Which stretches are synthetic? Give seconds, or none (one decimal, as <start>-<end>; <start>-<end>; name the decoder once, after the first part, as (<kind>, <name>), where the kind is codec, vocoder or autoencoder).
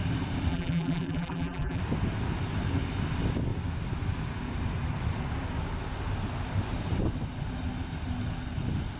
0.5-1.8 (vocoder, BigVGAN v2)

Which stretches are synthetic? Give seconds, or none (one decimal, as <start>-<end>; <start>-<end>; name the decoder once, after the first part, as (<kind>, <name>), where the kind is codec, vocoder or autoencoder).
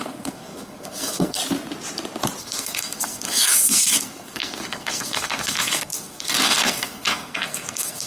0.0-1.4 (codec, SNAC); 2.4-8.1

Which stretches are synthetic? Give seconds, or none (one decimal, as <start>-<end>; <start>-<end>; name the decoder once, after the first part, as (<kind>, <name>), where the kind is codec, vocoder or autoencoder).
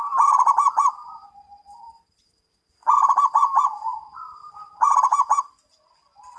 none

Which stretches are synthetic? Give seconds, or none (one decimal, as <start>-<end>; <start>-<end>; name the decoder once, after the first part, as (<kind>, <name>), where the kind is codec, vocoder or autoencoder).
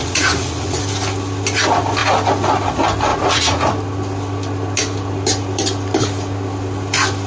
0.0-0.8 (vocoder, Vocos); 3.1-3.7